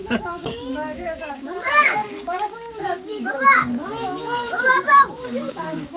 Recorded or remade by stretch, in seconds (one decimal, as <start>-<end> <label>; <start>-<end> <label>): 0.0-6.0 remade